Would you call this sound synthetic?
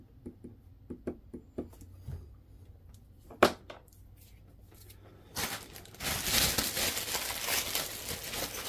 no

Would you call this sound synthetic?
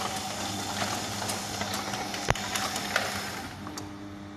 no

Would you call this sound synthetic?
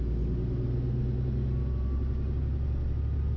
no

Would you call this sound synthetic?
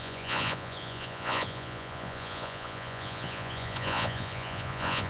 yes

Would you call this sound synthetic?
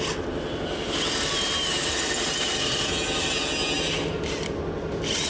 no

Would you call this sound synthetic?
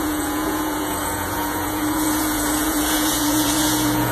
yes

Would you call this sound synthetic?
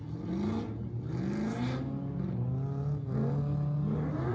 no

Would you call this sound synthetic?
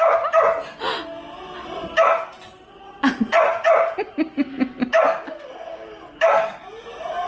no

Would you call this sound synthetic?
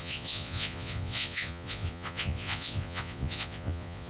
yes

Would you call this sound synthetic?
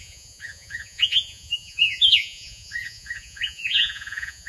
yes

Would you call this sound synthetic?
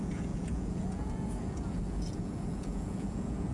yes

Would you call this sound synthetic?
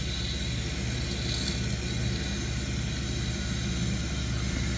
no